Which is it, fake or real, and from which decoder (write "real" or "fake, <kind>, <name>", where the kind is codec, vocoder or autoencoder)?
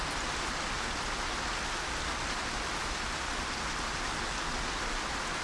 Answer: real